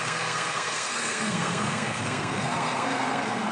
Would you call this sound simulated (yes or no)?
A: yes